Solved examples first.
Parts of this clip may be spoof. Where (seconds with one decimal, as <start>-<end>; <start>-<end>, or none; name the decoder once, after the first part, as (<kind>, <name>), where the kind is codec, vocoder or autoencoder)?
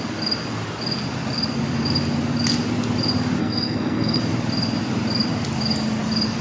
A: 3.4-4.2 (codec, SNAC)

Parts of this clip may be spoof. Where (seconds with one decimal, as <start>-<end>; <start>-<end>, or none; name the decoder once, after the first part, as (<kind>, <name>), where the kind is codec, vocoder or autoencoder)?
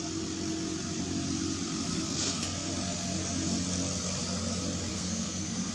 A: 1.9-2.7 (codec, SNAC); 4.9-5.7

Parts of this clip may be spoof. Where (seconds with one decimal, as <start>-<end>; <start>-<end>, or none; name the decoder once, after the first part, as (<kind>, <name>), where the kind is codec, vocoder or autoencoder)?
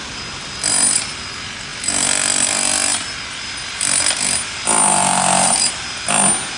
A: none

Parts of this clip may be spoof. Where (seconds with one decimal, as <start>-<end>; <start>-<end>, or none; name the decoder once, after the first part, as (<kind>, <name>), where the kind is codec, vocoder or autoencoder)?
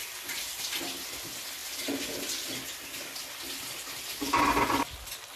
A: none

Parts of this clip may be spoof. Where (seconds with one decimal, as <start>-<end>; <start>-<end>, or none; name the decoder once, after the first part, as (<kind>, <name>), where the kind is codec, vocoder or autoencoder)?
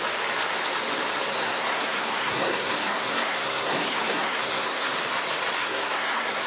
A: 1.3-4.9 (codec, SNAC); 5.6-6.5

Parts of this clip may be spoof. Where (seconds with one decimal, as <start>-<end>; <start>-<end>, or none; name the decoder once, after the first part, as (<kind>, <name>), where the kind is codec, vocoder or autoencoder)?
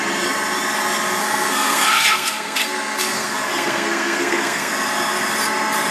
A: 1.2-4.7 (codec, SNAC)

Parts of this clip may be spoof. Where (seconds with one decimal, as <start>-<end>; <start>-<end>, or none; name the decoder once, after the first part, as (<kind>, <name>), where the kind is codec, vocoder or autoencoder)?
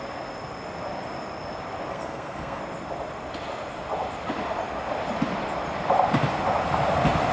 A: 1.9-2.6 (codec, SNAC)